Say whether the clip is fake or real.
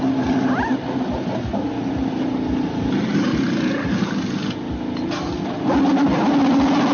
real